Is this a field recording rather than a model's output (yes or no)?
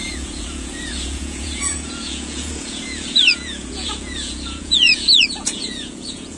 no